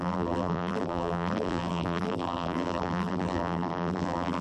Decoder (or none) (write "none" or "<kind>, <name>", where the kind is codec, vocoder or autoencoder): vocoder, BigVGAN v2